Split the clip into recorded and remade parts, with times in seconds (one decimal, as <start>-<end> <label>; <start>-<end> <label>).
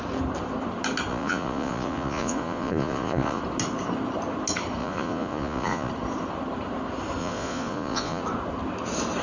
0.0-1.1 recorded; 1.1-3.4 remade; 3.4-4.8 recorded; 4.8-5.9 remade; 5.9-7.2 recorded; 7.2-8.2 remade; 8.2-9.2 recorded